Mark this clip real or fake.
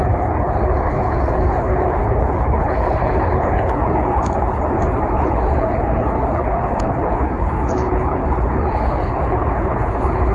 fake